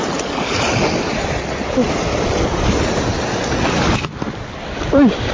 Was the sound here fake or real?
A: real